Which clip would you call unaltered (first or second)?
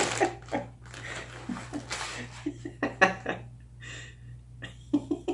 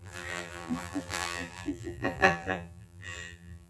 first